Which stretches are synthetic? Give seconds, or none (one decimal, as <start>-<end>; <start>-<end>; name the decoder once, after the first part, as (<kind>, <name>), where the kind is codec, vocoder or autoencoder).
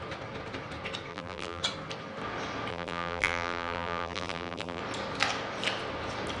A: 1.1-1.6 (vocoder, BigVGAN v2); 2.7-4.8